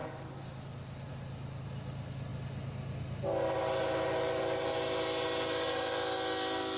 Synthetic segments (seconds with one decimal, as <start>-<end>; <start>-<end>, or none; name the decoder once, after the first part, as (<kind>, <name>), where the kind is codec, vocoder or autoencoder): none